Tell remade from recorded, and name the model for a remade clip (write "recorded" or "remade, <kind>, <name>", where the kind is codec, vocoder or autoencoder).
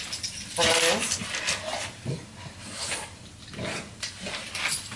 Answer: recorded